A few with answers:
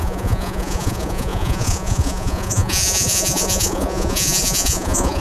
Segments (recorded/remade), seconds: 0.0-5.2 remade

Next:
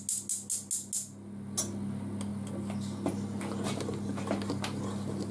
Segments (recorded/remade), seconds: 0.0-5.3 recorded